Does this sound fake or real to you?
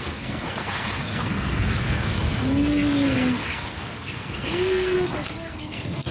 fake